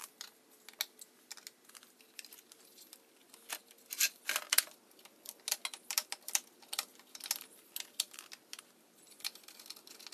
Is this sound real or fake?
real